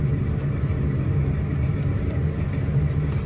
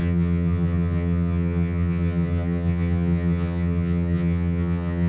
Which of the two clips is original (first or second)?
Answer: first